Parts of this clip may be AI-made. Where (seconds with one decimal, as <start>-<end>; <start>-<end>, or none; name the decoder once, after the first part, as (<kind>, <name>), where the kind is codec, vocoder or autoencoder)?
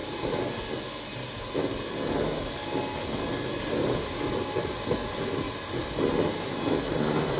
none